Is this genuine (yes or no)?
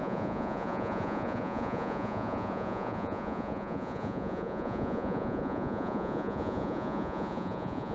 no